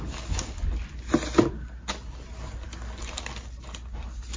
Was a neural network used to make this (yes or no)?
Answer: no